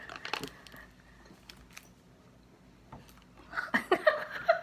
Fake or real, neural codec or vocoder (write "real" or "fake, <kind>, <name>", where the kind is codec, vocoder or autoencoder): real